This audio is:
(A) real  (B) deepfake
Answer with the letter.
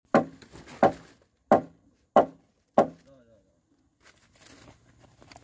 A